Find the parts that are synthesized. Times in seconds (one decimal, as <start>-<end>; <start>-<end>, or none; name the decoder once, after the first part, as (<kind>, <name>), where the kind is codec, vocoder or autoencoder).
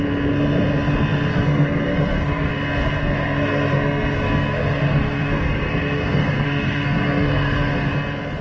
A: 1.3-2.5 (codec, SNAC); 3.0-7.9